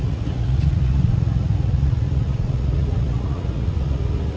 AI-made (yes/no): yes